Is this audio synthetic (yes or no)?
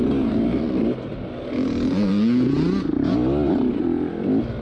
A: no